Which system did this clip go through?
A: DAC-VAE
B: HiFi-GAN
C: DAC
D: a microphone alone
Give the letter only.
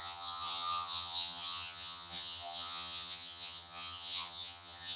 B